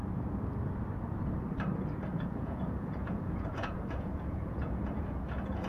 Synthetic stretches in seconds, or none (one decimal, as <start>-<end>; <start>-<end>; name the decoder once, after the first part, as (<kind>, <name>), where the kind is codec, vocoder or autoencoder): 2.1-5.7 (vocoder, Vocos)